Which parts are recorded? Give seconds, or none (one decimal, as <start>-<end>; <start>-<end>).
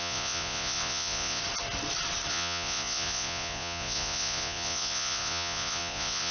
1.4-2.3